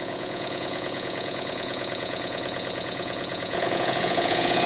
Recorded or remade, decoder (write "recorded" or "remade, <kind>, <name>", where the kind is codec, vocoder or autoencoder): remade, vocoder, Vocos